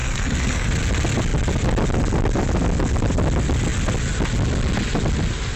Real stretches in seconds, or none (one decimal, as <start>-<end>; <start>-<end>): 0.7-5.6

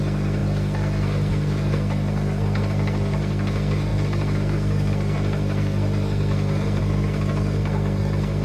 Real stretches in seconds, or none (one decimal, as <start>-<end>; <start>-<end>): none

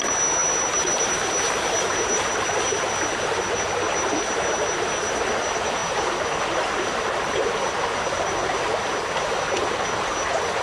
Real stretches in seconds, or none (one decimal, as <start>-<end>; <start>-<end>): 0.0-10.6

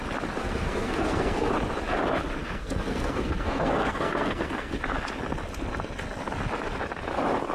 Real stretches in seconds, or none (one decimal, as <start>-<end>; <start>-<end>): 0.0-0.4; 1.5-2.4; 4.8-7.5